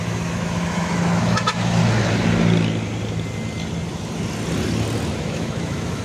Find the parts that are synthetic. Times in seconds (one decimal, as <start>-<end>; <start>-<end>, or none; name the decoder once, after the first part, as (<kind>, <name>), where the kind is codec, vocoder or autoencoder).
0.0-1.8 (autoencoder, DAC-VAE); 5.2-6.0

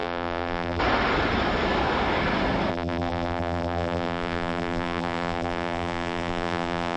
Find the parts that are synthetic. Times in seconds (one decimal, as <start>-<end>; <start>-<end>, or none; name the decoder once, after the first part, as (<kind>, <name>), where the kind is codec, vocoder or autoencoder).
0.0-0.8 (vocoder, BigVGAN v2); 2.7-7.0

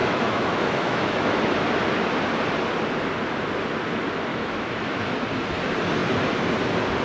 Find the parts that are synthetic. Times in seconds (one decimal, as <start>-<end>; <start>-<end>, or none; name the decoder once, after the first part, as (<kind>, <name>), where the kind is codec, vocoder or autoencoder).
0.0-1.3 (autoencoder, DAC-VAE); 4.3-5.0

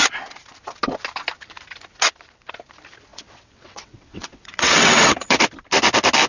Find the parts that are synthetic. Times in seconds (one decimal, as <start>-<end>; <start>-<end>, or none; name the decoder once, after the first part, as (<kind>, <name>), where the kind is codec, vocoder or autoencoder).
3.1-5.4 (vocoder, WaveNeXt)